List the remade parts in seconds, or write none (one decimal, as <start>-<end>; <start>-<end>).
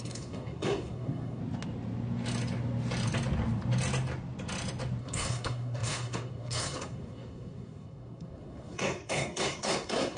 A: 0.0-1.4; 5.0-10.2